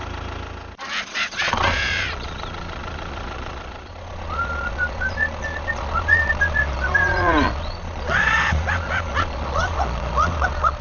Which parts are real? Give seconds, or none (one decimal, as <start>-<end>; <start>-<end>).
0.0-1.0